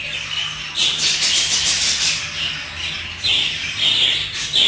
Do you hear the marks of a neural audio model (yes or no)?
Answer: no